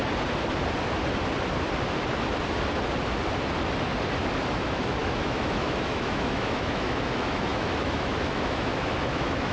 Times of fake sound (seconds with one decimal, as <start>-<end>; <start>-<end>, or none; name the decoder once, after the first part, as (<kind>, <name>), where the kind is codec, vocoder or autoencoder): 4.5-9.5 (autoencoder, DAC-VAE)